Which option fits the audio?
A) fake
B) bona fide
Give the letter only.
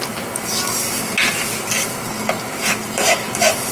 B